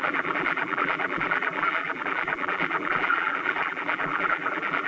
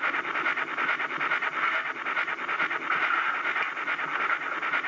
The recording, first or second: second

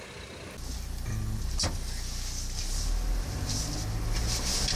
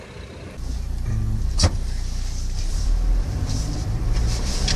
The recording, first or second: first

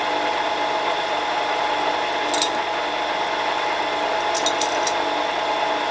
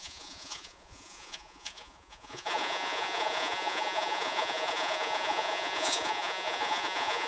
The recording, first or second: first